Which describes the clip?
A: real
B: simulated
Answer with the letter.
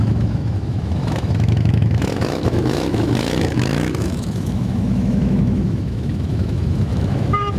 B